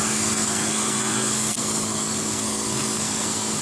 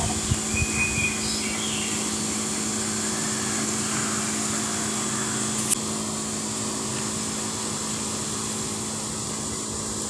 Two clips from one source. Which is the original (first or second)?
second